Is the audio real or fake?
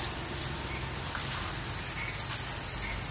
real